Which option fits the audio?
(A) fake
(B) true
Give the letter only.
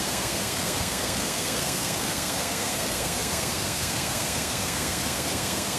A